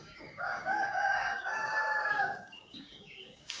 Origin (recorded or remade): remade